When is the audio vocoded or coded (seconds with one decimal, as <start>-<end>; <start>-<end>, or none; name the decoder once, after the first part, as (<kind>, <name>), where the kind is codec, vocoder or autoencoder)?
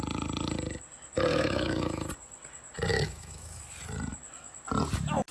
1.3-2.1 (autoencoder, DAC-VAE); 2.9-3.6